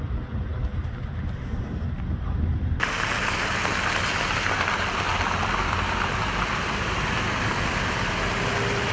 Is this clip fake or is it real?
real